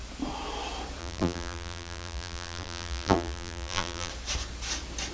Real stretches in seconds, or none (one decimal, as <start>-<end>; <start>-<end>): 0.0-1.0; 4.1-5.1